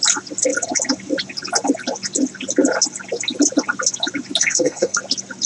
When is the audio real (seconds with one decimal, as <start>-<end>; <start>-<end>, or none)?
0.0-4.4; 5.0-5.5